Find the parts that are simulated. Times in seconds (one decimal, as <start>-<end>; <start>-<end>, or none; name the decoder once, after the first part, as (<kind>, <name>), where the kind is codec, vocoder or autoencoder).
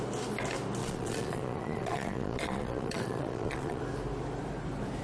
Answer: 0.8-3.8 (vocoder, Vocos)